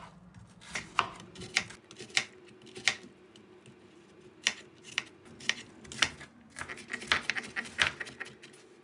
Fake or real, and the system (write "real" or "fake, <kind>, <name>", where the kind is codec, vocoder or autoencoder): real